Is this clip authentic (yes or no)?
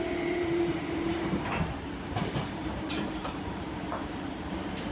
no